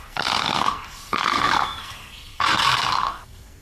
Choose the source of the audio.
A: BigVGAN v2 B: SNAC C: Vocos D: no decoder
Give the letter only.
B